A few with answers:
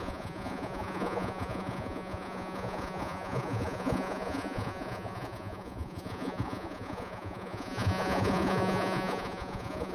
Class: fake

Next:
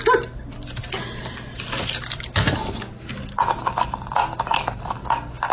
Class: real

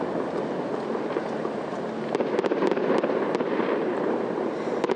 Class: real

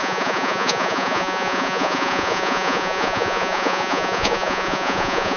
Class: fake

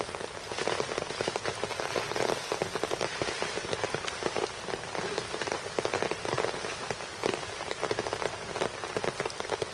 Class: real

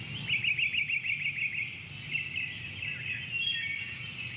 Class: real